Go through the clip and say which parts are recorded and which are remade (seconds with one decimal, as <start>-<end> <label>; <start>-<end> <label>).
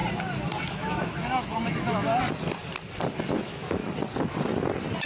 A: 0.0-0.7 recorded; 0.7-2.1 remade; 2.1-3.3 recorded; 3.3-3.8 remade; 3.8-5.1 recorded